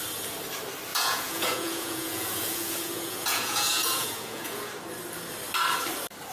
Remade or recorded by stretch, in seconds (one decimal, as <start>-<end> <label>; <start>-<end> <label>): 0.0-0.9 recorded; 0.9-4.7 remade; 4.7-6.3 recorded